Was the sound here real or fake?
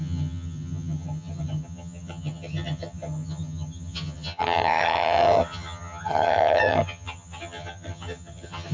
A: fake